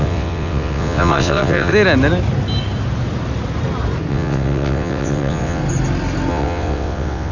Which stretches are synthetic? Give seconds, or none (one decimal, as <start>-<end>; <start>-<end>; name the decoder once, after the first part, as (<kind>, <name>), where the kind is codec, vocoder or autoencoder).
0.0-1.7 (vocoder, WaveNeXt); 4.1-5.6; 6.3-7.3

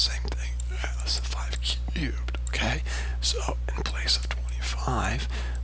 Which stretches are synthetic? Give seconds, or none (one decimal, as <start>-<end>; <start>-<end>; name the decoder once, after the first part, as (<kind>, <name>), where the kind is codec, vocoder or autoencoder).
none

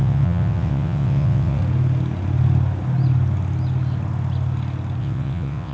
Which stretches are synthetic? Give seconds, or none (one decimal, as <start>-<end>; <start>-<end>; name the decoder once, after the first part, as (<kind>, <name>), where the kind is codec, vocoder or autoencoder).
0.0-1.6 (vocoder, WaveNeXt); 5.0-5.7

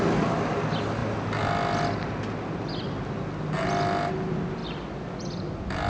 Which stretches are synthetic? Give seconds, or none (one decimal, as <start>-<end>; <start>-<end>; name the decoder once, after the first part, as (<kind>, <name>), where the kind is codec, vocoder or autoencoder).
none